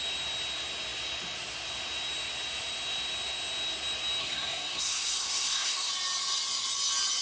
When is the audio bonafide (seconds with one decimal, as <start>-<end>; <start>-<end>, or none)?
0.0-4.2; 5.9-7.2